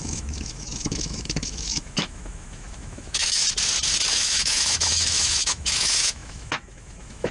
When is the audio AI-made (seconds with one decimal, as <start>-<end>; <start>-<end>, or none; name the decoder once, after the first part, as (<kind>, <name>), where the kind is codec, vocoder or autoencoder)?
0.0-3.4 (autoencoder, DAC-VAE); 4.1-7.3